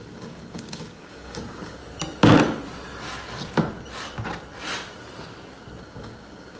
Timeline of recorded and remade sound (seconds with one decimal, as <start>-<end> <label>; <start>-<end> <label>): 0.0-1.8 remade; 1.8-5.8 recorded; 5.8-6.6 remade